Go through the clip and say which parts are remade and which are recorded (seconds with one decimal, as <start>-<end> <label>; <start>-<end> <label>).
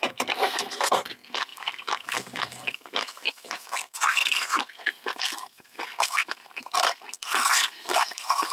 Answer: 0.0-8.5 remade